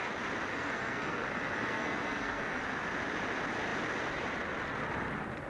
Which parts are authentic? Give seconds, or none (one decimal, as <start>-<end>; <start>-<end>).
0.0-0.5; 2.6-5.5